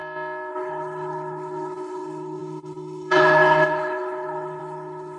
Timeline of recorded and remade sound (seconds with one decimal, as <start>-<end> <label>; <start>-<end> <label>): 0.0-0.5 recorded; 0.5-5.2 remade